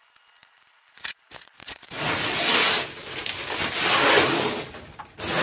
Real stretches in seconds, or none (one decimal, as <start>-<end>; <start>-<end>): 0.0-0.4; 2.4-5.4